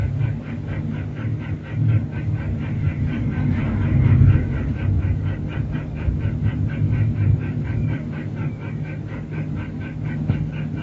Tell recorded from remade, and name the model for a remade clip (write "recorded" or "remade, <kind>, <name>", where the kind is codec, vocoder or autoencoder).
remade, codec, DAC